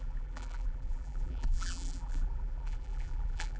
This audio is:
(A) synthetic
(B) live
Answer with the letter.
A